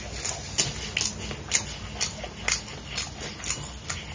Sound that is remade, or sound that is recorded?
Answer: recorded